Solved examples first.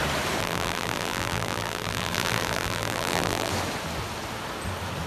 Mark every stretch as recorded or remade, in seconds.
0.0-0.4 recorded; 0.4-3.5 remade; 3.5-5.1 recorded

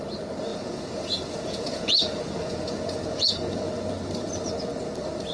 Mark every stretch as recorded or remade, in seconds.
0.0-0.5 recorded; 0.5-3.7 remade; 3.7-5.3 recorded

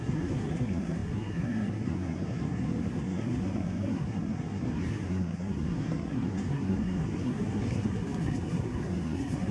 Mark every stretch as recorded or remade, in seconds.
0.0-9.5 remade

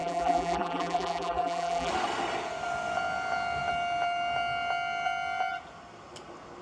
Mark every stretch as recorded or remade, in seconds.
0.0-1.9 remade; 1.9-6.6 recorded